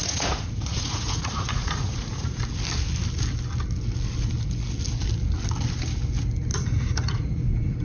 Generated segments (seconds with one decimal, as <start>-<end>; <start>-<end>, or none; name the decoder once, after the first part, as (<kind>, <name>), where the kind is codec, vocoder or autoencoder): 0.0-2.4 (vocoder, Vocos); 6.5-7.8